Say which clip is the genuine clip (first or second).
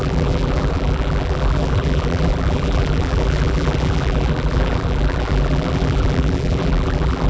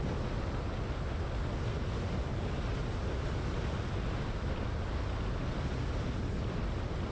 second